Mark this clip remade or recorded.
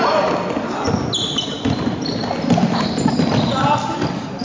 recorded